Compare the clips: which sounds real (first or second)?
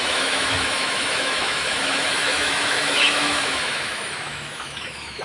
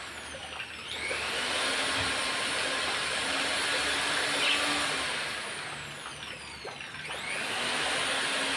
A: second